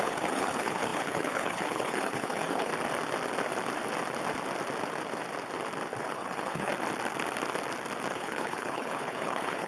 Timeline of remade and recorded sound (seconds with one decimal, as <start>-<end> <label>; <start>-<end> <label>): 0.0-2.7 remade; 2.7-6.0 recorded; 6.0-6.7 remade; 6.7-8.1 recorded; 8.1-9.7 remade